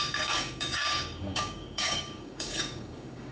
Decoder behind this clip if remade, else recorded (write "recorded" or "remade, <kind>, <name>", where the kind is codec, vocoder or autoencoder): remade, codec, DAC